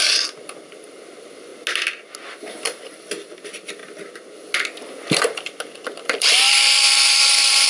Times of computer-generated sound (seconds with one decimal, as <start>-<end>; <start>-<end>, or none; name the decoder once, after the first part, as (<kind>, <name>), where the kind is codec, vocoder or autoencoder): 0.0-1.5 (vocoder, BigVGAN v2); 2.3-3.8; 5.2-7.7